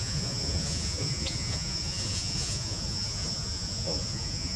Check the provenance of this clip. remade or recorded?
remade